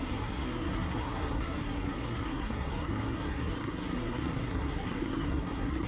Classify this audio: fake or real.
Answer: fake